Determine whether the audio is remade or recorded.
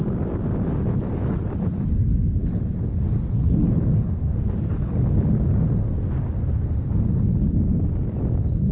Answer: recorded